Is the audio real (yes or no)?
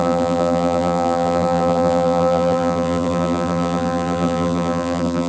no